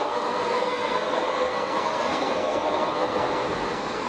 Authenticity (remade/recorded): remade